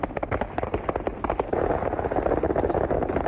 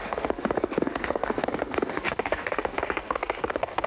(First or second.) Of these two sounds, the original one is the first